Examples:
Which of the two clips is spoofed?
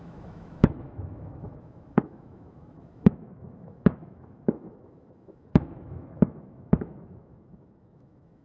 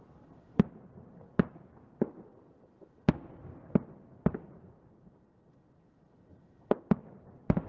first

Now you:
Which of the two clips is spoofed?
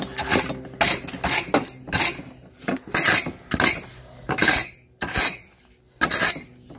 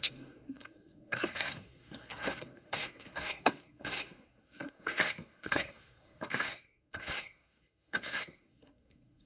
second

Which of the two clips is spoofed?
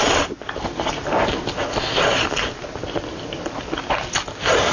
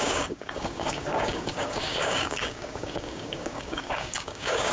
second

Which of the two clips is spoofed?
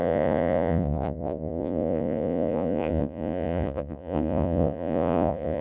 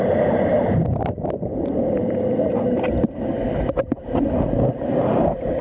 first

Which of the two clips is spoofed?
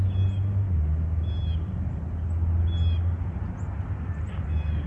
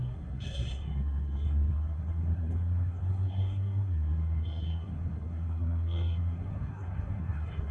second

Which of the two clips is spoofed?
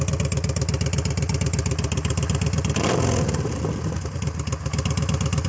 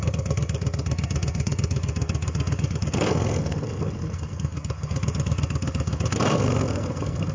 second